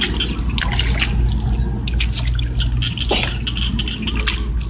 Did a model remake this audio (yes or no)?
no